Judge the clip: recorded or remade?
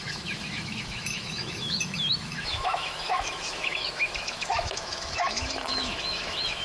remade